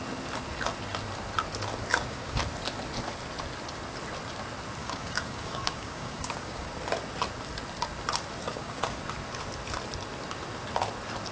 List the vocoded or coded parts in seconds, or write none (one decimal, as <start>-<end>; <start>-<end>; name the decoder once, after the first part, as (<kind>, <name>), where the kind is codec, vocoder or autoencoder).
1.9-2.4 (codec, DAC); 4.8-6.7; 8.4-9.0